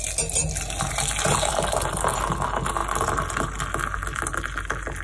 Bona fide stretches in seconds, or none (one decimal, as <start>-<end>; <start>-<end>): 0.0-5.0